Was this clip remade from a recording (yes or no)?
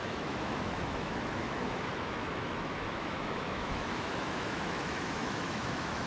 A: yes